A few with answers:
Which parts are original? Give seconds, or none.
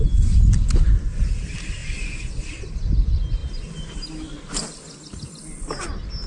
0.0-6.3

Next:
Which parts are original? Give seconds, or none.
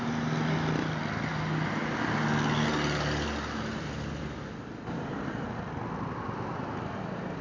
0.0-7.4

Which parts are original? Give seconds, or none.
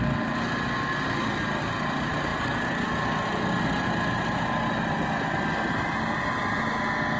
0.0-7.2